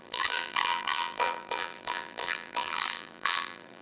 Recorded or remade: remade